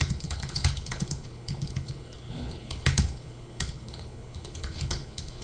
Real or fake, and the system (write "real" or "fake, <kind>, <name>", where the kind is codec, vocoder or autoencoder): fake, codec, HILCodec